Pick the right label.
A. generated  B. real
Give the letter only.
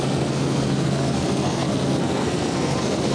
A